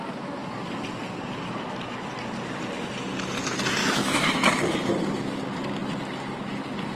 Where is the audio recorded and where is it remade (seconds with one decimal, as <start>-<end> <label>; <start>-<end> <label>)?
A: 0.0-3.8 recorded; 3.8-4.9 remade; 4.9-6.9 recorded